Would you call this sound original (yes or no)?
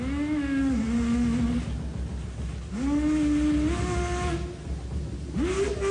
yes